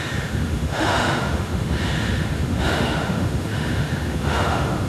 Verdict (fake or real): fake